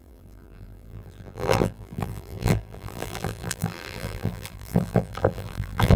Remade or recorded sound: remade